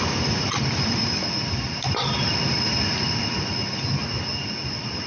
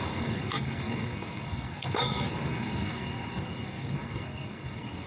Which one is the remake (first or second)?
second